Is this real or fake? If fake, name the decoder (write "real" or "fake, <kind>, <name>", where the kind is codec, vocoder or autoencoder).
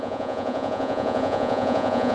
fake, vocoder, Vocos